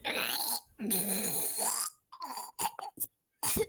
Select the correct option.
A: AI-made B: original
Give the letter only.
A